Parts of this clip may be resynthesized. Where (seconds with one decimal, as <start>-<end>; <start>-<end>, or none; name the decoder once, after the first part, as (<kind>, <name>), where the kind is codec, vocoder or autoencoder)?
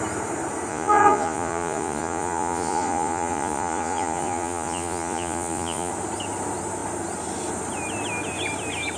0.7-5.9 (vocoder, Vocos)